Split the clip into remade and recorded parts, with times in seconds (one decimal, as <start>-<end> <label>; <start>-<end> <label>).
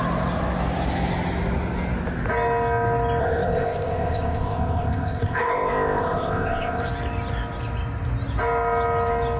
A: 0.0-3.2 recorded; 3.2-6.9 remade; 6.9-9.4 recorded